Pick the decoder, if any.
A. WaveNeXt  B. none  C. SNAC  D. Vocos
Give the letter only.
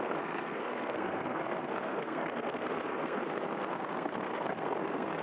C